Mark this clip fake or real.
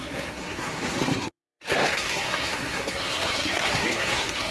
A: fake